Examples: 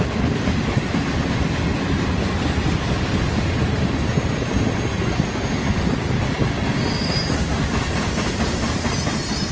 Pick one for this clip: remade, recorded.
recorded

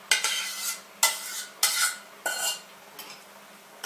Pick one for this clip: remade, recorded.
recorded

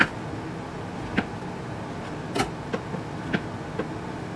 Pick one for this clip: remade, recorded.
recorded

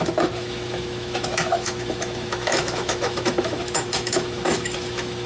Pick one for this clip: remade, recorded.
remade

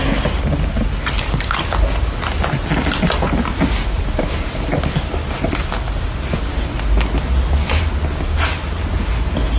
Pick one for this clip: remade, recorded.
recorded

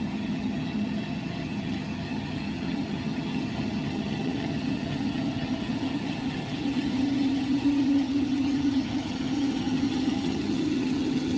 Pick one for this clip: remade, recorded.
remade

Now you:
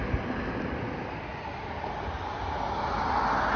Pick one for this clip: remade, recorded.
recorded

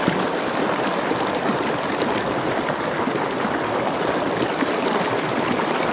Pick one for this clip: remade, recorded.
recorded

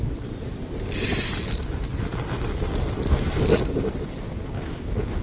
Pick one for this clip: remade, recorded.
recorded